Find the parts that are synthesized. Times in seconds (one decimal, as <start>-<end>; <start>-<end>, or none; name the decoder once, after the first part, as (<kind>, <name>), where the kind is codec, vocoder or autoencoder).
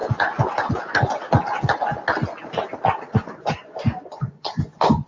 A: 3.1-5.1 (vocoder, Vocos)